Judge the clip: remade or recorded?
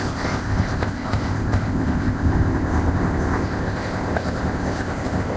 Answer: remade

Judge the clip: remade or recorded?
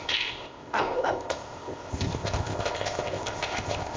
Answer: remade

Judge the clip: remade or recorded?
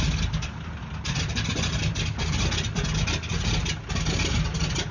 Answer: recorded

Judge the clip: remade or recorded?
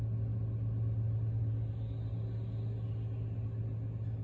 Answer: recorded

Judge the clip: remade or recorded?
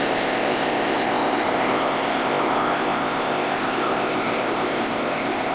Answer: remade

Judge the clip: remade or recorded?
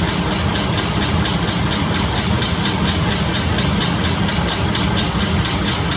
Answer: recorded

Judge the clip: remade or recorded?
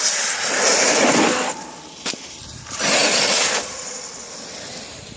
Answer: recorded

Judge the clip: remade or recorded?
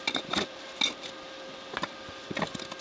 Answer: recorded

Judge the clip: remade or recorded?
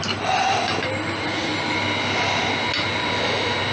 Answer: recorded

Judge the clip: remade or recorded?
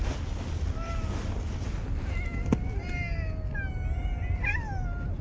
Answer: recorded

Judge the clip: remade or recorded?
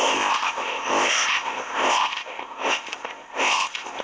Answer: remade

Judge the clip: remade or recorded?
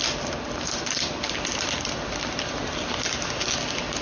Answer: recorded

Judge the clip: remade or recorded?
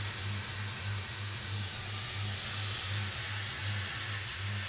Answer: recorded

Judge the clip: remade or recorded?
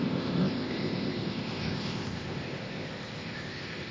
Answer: remade